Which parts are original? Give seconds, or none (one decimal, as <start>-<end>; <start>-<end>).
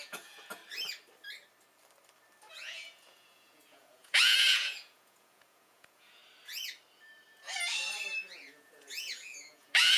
0.6-2.5; 6.2-8.2